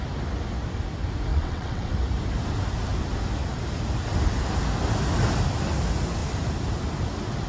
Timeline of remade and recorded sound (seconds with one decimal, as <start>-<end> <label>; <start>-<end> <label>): 0.0-1.3 recorded; 1.3-1.9 remade; 1.9-7.5 recorded